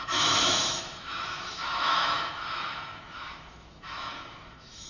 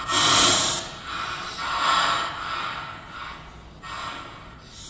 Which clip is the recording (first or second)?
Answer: second